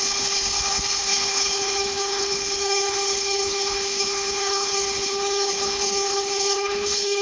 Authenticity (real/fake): fake